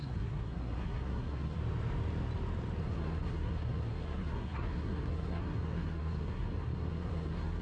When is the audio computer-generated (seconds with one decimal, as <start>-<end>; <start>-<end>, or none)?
0.0-1.6; 2.8-7.6